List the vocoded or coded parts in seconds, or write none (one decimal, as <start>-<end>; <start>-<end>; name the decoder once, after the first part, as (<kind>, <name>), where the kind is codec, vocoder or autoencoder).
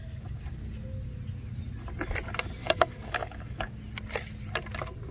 2.6-3.7 (codec, DAC)